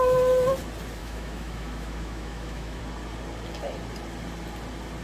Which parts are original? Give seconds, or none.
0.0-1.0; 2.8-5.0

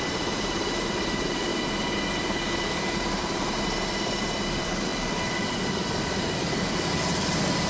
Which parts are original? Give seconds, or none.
1.5-2.2